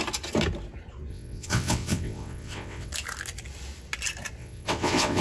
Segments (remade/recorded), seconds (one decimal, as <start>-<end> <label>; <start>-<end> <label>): 0.0-1.1 recorded; 1.1-2.9 remade; 2.9-4.4 recorded; 4.4-5.2 remade